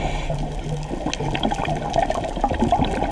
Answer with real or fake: real